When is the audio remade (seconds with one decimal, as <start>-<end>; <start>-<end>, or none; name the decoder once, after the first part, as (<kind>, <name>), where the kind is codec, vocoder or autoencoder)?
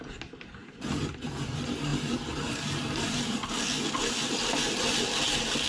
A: none